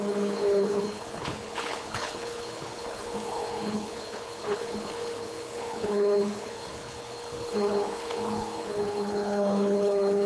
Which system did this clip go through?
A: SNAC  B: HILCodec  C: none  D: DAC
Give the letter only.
B